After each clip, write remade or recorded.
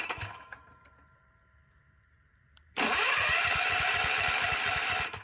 remade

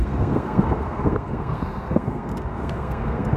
remade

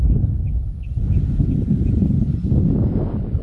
recorded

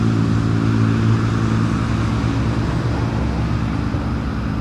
recorded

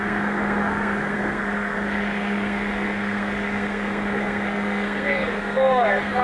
remade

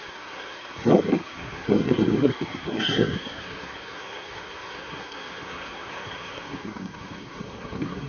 remade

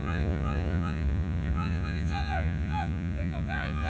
remade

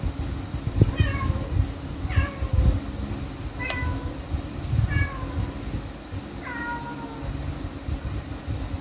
recorded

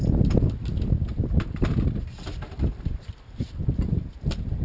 recorded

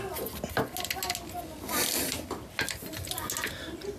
recorded